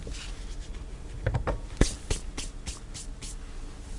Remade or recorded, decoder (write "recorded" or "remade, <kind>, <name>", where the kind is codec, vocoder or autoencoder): recorded